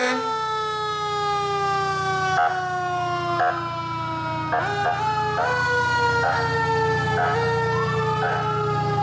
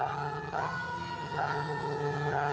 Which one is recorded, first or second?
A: first